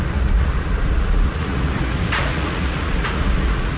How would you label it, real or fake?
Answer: fake